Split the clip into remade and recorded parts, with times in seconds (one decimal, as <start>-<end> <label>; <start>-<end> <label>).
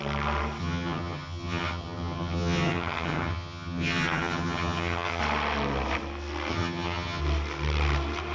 0.0-0.6 recorded; 0.6-5.2 remade; 5.2-6.5 recorded; 6.5-7.2 remade; 7.2-8.3 recorded